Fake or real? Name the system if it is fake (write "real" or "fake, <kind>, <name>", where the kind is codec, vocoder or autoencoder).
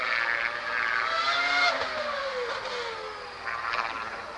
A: real